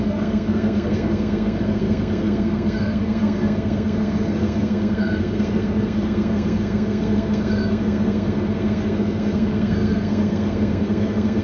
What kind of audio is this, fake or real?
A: fake